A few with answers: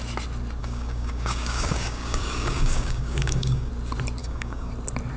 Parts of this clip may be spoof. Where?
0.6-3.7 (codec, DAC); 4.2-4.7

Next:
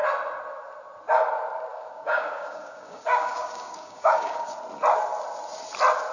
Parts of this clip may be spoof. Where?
1.7-4.6 (codec, DAC)

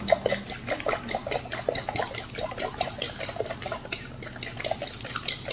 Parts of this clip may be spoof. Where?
none

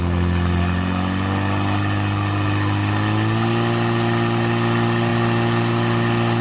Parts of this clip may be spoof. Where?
none

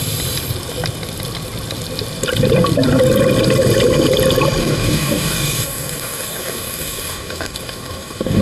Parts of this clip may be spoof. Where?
4.6-8.4 (codec, DAC)

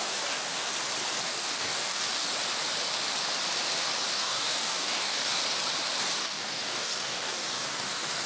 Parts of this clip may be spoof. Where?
0.0-0.7 (codec, DAC); 1.2-2.3; 4.1-5.4; 6.0-8.3

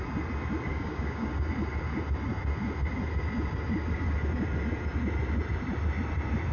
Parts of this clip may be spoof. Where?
0.7-1.3 (codec, DAC)

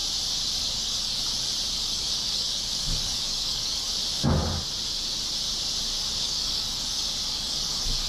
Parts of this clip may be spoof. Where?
0.6-1.2 (codec, DAC); 1.7-3.9; 6.1-8.1